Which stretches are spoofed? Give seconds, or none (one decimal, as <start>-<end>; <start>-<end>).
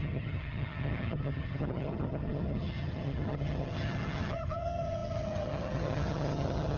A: 0.0-6.8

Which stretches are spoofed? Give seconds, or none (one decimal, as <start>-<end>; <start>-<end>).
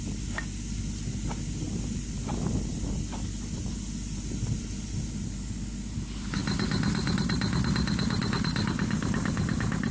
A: none